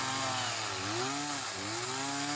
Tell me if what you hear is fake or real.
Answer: real